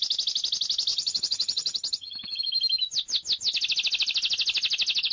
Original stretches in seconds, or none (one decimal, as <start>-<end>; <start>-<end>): 0.0-0.9; 2.4-5.1